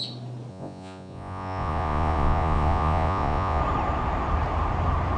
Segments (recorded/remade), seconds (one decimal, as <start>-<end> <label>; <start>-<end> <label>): 0.0-0.5 recorded; 0.5-3.6 remade; 3.6-5.2 recorded